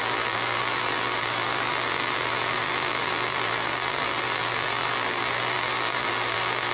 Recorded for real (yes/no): no